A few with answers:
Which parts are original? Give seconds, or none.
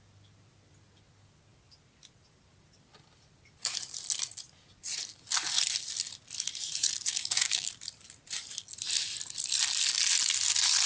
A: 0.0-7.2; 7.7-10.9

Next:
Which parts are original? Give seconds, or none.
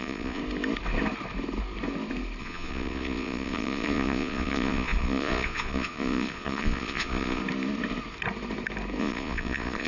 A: 0.4-2.4; 7.4-9.0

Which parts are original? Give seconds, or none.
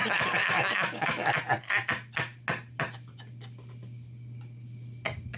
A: 0.0-0.4; 1.4-5.4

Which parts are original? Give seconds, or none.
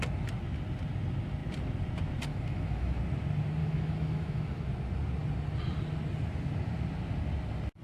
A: 0.0-2.3; 3.0-3.6; 4.6-7.8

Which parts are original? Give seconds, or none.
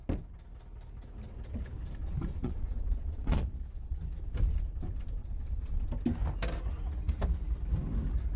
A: 0.0-2.4; 4.0-5.2; 5.9-8.4